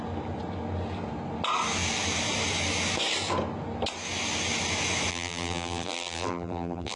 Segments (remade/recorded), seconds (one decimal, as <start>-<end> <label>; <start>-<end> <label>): 0.0-5.1 recorded; 5.1-7.0 remade